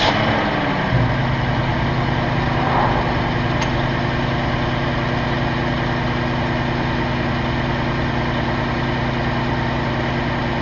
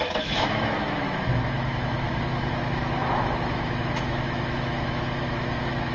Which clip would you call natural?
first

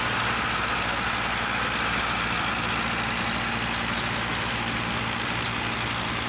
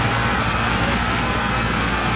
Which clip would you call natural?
first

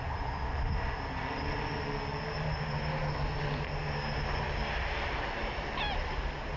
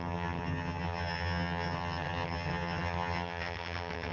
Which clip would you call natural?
first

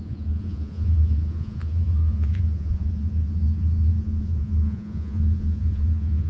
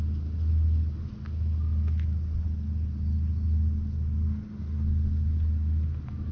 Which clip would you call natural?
second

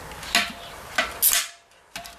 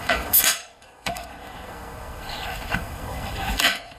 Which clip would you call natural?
first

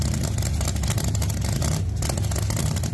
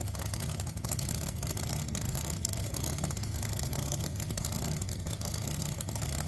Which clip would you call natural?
first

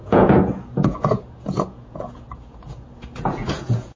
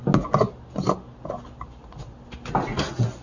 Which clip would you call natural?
second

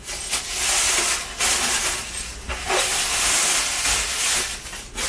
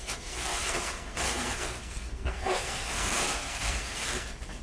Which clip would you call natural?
first